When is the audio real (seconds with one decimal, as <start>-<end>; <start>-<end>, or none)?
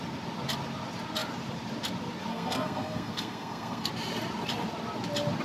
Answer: 0.0-2.3; 3.9-5.4